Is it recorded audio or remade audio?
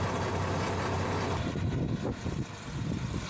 recorded